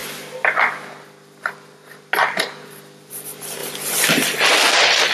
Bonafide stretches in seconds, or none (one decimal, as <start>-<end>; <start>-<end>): 0.0-5.1